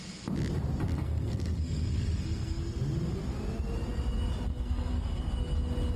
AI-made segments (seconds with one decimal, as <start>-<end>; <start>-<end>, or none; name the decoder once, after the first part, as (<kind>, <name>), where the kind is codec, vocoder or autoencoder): 0.9-2.6 (codec, SNAC); 4.5-5.3